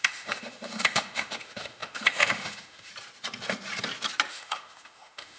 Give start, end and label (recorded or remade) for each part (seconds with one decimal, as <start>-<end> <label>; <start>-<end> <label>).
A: 0.0-2.9 remade; 2.9-4.3 recorded; 4.3-5.4 remade